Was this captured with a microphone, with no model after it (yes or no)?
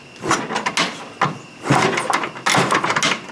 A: yes